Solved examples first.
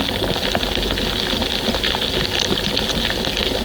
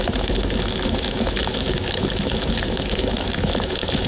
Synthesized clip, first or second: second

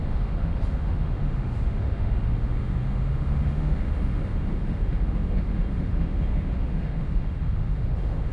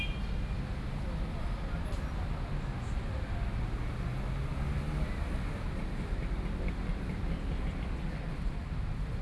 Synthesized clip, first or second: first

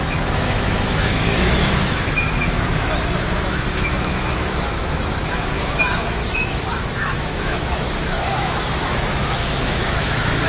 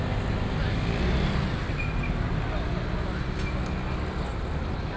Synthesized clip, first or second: first